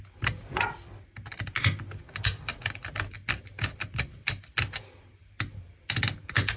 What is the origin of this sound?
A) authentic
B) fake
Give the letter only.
A